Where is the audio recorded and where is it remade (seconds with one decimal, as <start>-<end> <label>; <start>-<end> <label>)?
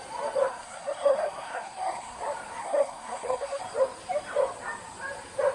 0.0-0.5 recorded; 0.5-2.2 remade; 2.2-2.6 recorded; 2.6-3.6 remade; 3.6-5.5 recorded